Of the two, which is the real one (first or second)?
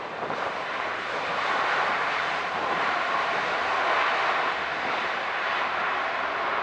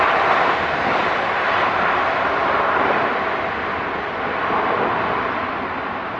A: second